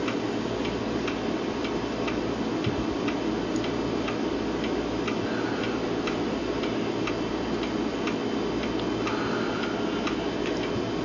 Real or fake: real